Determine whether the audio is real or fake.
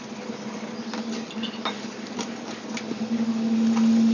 real